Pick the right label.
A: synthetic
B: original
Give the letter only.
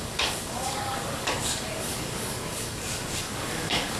A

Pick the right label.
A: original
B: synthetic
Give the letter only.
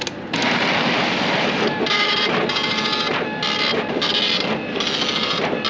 A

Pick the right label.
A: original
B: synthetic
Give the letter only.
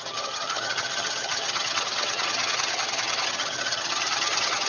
B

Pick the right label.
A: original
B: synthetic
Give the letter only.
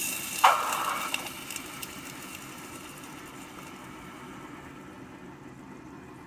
A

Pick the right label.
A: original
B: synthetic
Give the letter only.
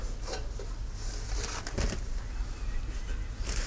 A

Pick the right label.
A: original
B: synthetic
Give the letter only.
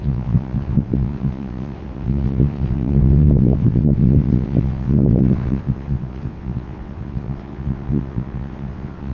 B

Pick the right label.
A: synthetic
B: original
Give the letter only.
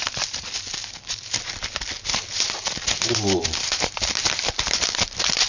A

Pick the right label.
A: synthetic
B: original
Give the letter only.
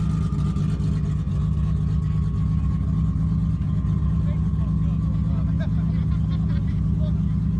B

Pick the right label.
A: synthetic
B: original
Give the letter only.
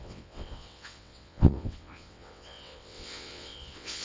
A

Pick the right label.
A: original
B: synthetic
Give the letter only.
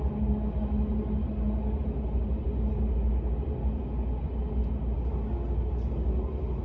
A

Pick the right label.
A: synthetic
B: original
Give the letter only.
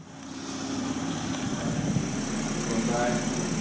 B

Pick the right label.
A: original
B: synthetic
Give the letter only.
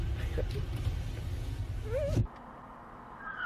A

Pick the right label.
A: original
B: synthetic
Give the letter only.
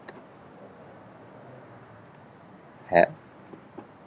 A